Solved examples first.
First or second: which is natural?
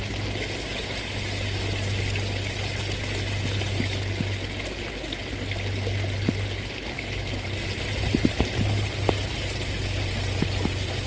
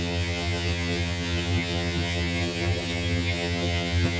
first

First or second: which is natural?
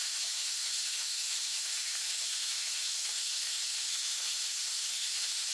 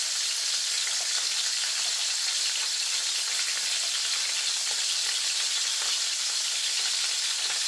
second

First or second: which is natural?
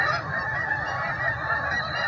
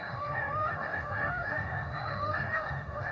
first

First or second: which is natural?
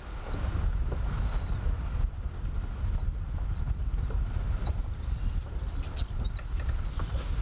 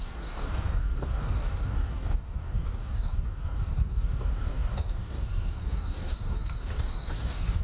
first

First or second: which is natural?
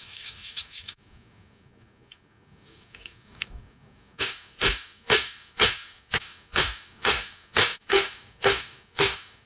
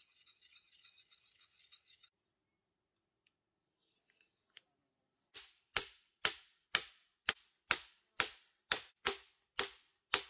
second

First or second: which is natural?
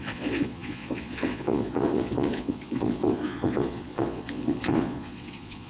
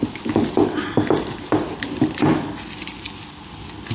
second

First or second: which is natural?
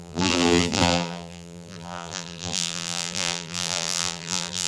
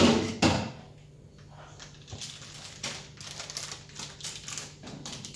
second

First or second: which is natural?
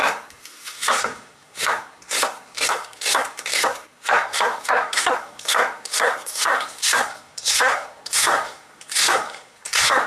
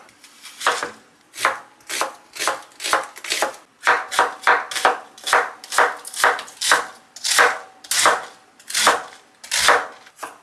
second